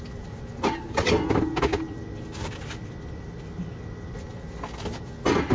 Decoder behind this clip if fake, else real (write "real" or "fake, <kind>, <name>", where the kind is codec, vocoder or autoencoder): real